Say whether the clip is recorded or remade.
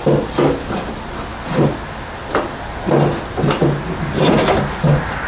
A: recorded